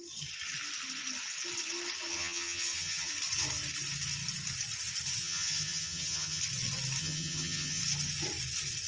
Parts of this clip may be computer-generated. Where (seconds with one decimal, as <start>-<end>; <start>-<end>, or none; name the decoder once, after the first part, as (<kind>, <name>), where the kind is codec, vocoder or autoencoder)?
2.1-3.1 (vocoder, HiFi-GAN); 5.2-6.4; 7.0-7.8